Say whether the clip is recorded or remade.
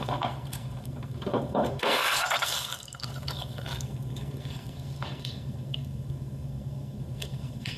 remade